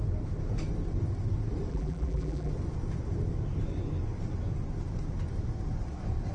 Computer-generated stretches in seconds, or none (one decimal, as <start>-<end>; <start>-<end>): 1.7-2.5